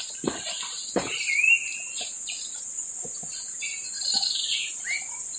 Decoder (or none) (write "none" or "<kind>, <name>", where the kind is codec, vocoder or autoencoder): vocoder, BigVGAN v2